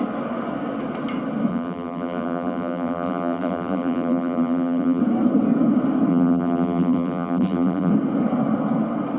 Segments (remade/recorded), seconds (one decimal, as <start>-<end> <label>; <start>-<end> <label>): 0.0-1.5 recorded; 1.5-5.0 remade; 5.0-6.1 recorded; 6.1-7.9 remade; 7.9-9.2 recorded